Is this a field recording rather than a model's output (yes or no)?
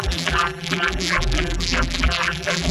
no